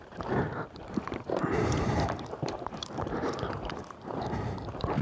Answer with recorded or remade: remade